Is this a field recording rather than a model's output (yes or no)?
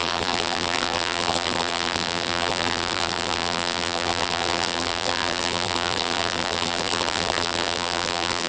no